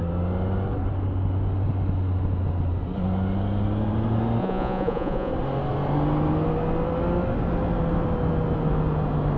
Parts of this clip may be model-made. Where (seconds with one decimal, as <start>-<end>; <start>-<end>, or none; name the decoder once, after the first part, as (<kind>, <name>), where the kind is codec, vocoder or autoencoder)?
4.4-5.3 (vocoder, Vocos)